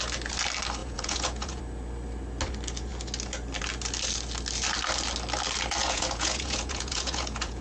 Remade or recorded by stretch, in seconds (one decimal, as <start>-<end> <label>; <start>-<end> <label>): 0.0-0.8 recorded; 0.8-1.6 remade; 1.6-5.8 recorded; 5.8-7.6 remade